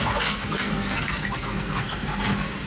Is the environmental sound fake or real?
fake